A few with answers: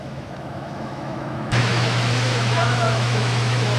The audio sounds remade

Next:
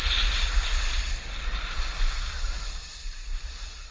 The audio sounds recorded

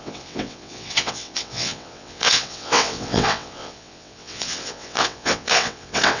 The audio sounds remade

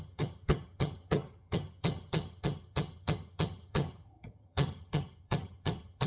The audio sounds remade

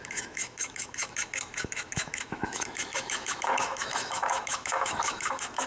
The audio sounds remade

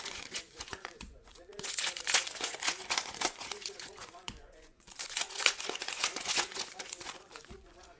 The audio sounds remade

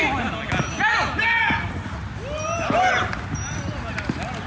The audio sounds recorded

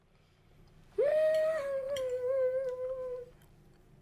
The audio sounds remade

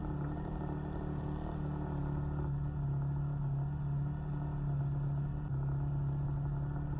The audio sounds recorded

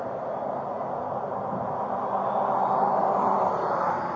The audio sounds recorded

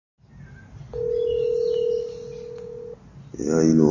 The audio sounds recorded